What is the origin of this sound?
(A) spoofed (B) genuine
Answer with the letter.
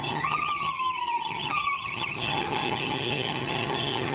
A